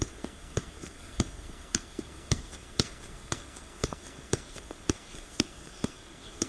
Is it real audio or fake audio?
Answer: fake